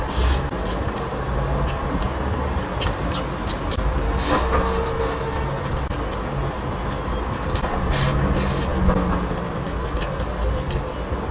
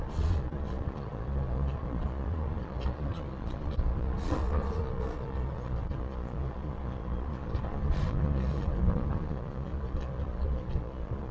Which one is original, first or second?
first